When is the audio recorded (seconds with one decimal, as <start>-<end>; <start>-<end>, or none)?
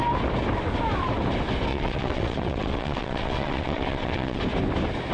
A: 0.0-1.7; 4.4-5.1